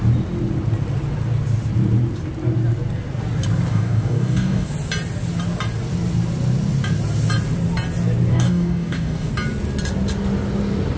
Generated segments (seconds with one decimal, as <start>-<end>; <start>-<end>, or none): 3.7-4.7; 8.3-9.3